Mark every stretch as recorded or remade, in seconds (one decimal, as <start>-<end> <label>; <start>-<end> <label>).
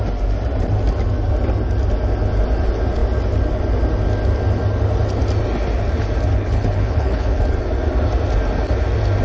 0.0-6.3 recorded; 6.3-7.4 remade; 7.4-9.2 recorded